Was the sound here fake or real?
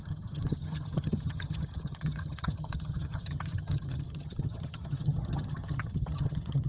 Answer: fake